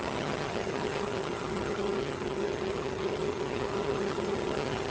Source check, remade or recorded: remade